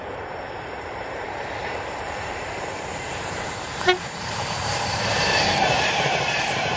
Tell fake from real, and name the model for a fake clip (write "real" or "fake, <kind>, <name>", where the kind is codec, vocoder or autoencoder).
fake, vocoder, BigVGAN v2